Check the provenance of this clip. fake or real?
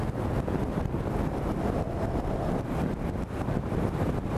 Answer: real